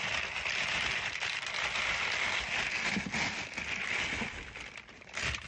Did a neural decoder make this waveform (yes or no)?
no